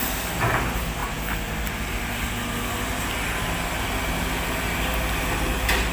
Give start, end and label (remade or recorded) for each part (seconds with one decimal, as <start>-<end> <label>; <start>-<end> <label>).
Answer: 0.0-5.9 recorded